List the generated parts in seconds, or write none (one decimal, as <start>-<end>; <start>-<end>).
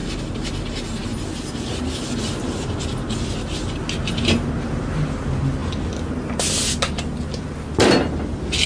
none